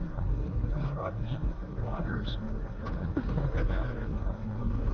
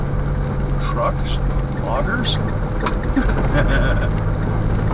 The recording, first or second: second